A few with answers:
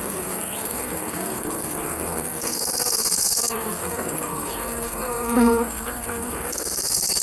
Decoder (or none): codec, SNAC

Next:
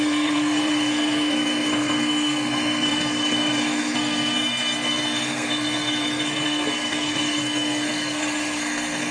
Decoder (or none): codec, SNAC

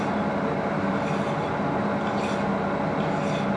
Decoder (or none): none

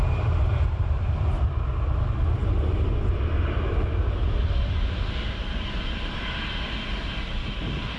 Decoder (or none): none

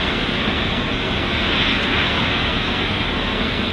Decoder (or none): codec, SNAC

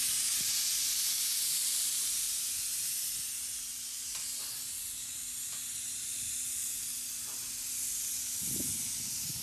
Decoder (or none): none